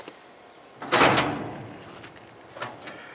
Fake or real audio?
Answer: real